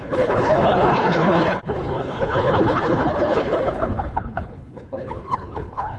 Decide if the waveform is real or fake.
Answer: fake